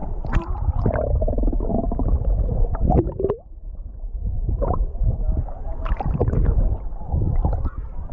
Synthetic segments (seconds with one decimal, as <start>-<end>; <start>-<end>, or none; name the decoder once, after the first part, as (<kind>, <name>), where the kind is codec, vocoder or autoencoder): 0.0-0.6 (vocoder, BigVGAN v2); 1.7-6.6